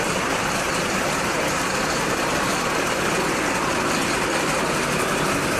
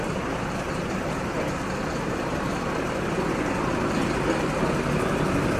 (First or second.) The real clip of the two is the second